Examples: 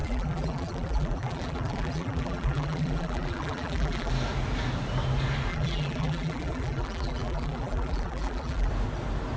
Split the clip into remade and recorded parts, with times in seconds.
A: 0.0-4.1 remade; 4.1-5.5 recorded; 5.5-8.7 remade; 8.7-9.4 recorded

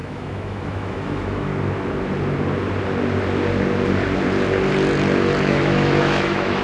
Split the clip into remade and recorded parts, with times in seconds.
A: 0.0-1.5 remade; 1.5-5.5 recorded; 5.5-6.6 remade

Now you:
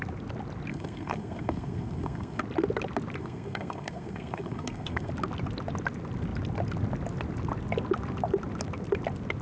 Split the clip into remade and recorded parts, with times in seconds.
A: 0.0-0.7 recorded; 0.7-2.4 remade; 2.4-3.2 recorded; 3.2-5.1 remade; 5.1-9.4 recorded

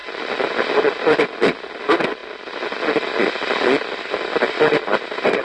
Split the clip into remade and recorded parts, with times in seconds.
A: 0.0-5.4 recorded

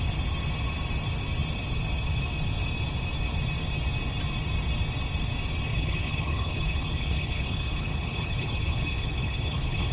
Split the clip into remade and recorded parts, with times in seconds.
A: 0.0-5.7 recorded; 5.7-9.9 remade

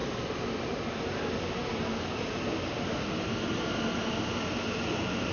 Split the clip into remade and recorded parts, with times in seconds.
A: 0.0-5.3 recorded

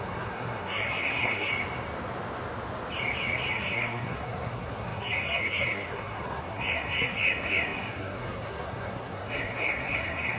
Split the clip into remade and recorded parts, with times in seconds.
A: 0.0-1.5 remade; 1.5-3.5 recorded; 3.5-10.4 remade

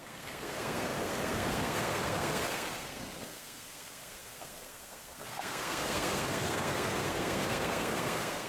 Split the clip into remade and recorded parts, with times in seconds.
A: 0.0-8.5 remade